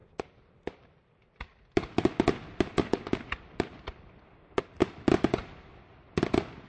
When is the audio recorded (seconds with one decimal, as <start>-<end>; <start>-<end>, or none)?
0.0-4.0; 4.6-6.3